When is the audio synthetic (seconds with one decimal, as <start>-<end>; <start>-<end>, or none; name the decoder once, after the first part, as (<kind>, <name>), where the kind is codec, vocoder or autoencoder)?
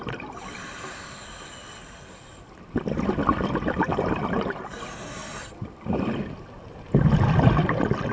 none